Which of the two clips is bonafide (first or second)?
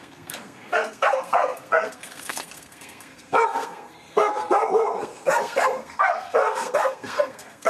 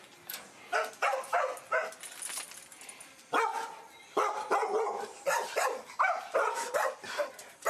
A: second